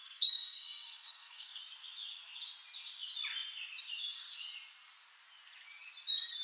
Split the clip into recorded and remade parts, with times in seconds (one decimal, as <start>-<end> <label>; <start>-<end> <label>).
0.0-1.6 remade; 1.6-6.4 recorded